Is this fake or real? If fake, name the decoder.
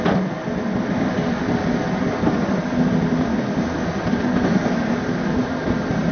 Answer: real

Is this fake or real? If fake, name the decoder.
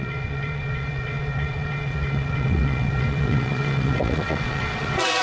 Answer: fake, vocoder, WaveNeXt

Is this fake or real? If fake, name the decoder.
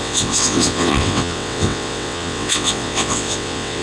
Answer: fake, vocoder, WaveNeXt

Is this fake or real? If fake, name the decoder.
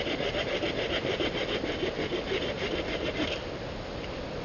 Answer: real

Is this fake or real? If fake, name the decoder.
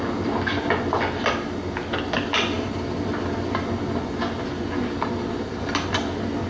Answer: real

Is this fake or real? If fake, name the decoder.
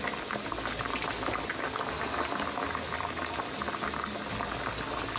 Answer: real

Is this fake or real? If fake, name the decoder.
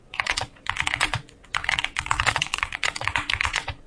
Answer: fake, vocoder, WaveNeXt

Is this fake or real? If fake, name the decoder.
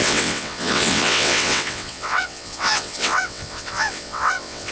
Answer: fake, vocoder, WaveNeXt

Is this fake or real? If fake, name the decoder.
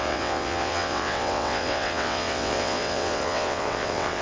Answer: fake, vocoder, WaveNeXt